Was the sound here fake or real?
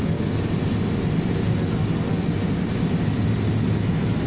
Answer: real